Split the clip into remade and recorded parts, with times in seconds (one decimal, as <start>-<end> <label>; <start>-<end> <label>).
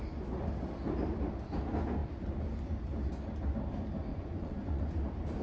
0.0-4.1 recorded; 4.1-4.8 remade; 4.8-5.4 recorded